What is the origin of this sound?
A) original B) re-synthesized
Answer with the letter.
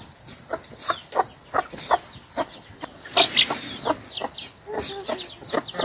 A